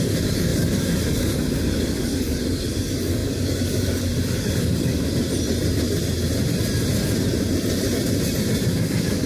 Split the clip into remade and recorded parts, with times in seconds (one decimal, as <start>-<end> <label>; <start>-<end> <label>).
0.0-5.2 remade; 5.2-8.7 recorded; 8.7-9.3 remade